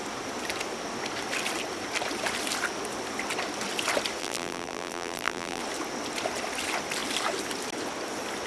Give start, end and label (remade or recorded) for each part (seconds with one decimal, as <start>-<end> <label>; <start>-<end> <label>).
0.0-4.2 recorded; 4.2-5.6 remade; 5.6-8.5 recorded